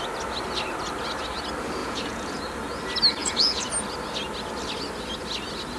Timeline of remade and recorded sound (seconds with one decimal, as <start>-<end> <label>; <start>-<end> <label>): 0.0-1.8 recorded; 1.8-2.4 remade; 2.4-3.2 recorded; 3.2-3.7 remade; 3.7-5.8 recorded